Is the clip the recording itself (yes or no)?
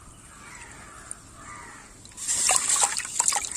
yes